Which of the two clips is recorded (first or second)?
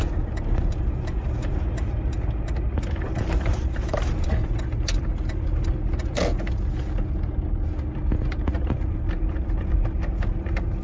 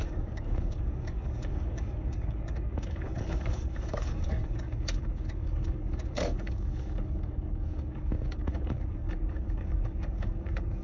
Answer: first